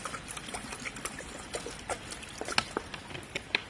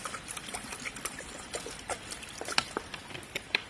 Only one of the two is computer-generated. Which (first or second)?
second